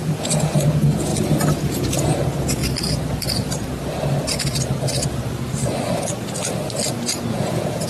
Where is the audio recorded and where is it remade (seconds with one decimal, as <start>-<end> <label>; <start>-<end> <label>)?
0.0-1.1 remade; 1.1-1.6 recorded; 1.6-2.6 remade; 2.6-7.3 recorded; 7.3-7.9 remade